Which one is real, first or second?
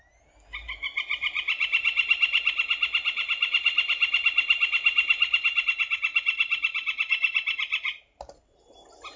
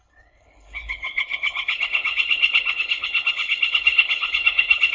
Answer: first